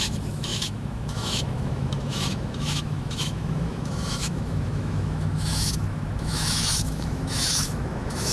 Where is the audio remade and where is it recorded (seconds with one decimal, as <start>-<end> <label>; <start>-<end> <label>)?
0.0-8.3 remade